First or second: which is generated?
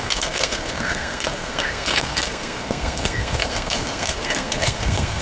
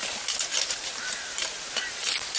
first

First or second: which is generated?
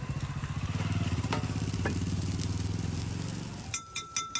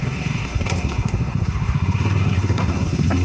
second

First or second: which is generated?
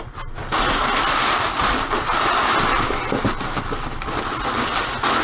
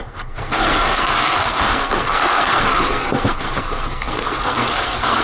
second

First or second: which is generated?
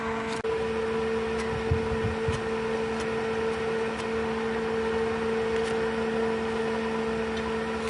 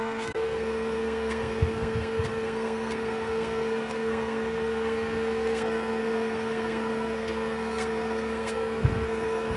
second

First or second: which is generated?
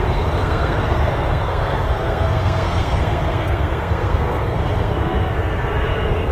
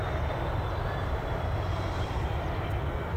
first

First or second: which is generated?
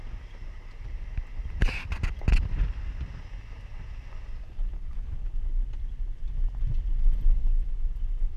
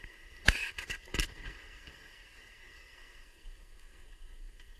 second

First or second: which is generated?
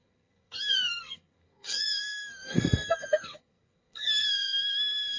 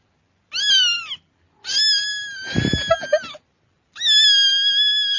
first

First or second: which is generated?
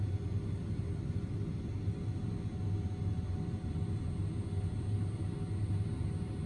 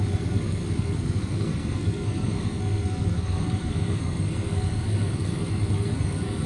second